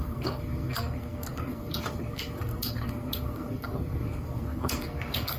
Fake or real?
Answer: fake